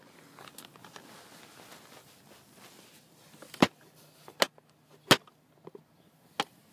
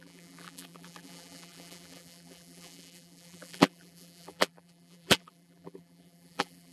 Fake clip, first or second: second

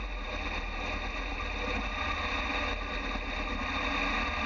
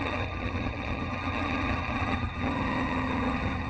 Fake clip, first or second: second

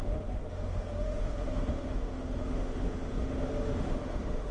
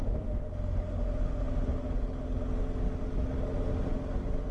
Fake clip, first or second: first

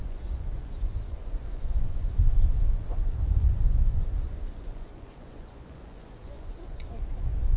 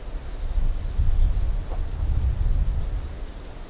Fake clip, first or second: first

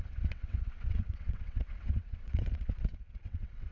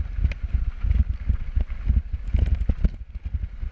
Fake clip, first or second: first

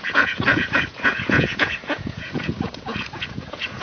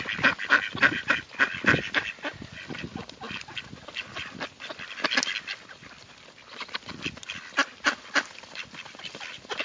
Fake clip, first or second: first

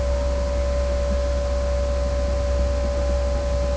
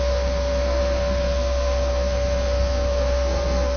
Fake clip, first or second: second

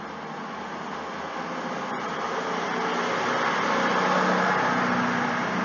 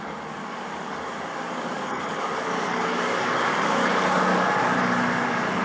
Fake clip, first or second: second